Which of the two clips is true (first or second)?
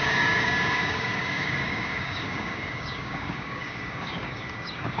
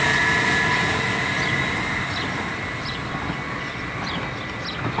second